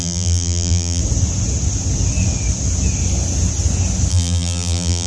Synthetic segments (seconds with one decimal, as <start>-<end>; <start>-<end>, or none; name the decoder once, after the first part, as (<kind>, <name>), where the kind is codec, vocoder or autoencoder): 0.0-1.0 (vocoder, BigVGAN v2); 4.1-5.1